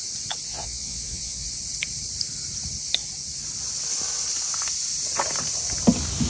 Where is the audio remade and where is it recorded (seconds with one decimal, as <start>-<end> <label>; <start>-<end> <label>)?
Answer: 0.0-0.5 recorded; 0.5-1.5 remade; 1.5-6.3 recorded